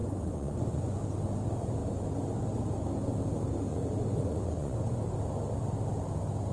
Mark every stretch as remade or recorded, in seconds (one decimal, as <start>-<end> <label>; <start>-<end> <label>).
0.0-1.0 remade; 1.0-3.7 recorded; 3.7-5.0 remade; 5.0-6.5 recorded